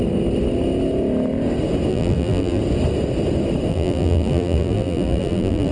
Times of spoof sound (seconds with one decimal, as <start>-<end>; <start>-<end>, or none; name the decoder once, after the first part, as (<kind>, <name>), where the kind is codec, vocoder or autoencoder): 1.9-2.6 (vocoder, BigVGAN v2); 3.7-5.7

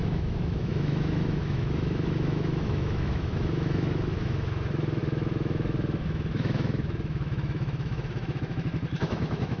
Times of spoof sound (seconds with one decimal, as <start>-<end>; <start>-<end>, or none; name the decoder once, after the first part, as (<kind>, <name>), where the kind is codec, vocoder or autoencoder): 0.0-9.6 (autoencoder, DAC-VAE)

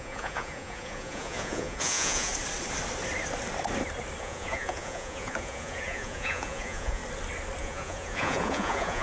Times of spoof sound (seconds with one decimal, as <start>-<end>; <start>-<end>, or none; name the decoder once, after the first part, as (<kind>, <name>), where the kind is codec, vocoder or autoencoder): 0.0-2.3 (vocoder, Vocos); 4.2-7.0; 7.6-9.0